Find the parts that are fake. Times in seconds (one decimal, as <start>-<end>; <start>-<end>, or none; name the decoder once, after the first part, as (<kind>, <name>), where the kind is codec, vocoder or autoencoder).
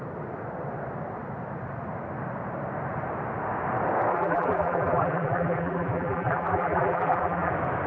4.1-7.5 (vocoder, BigVGAN v2)